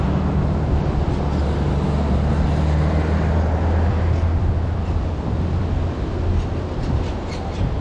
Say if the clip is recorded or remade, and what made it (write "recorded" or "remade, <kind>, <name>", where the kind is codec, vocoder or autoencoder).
recorded